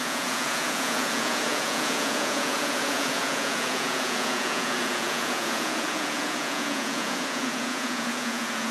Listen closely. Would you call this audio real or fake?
fake